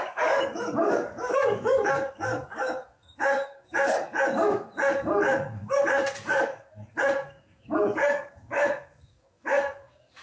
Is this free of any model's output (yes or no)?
no